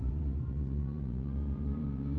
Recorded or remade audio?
remade